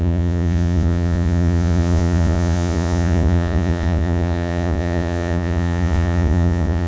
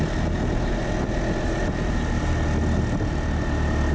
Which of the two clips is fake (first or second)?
first